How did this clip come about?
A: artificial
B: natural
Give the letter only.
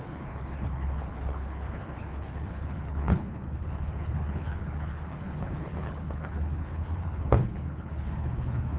A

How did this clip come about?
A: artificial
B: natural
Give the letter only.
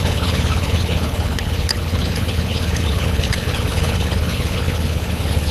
A